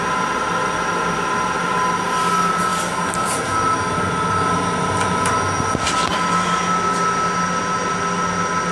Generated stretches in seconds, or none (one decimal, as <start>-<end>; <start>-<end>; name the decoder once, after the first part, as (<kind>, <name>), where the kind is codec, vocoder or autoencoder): none